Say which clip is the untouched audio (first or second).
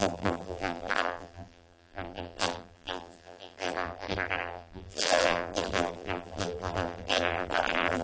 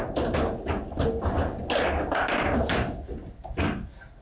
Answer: second